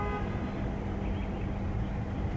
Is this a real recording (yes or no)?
yes